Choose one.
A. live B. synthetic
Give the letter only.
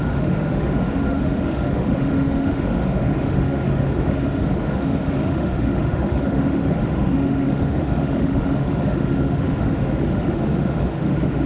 B